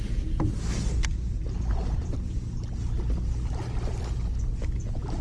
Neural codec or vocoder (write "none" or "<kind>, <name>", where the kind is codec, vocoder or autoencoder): none